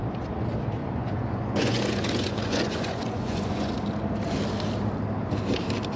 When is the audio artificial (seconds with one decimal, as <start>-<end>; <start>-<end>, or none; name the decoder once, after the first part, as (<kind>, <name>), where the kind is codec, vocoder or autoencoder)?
0.8-3.7 (vocoder, Vocos)